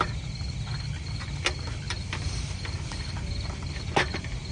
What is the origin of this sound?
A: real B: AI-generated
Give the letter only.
A